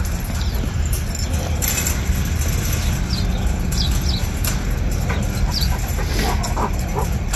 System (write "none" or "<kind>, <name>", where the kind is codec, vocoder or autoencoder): none